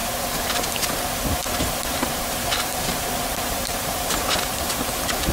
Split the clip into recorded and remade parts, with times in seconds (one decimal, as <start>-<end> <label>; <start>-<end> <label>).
0.0-1.4 recorded; 1.4-4.6 remade; 4.6-5.3 recorded